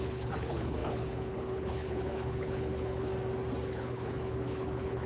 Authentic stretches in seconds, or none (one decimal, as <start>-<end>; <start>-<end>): 3.1-3.7